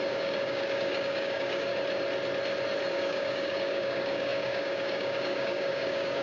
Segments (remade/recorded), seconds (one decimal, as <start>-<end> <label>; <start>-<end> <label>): 0.0-1.7 remade; 1.7-2.9 recorded; 2.9-6.2 remade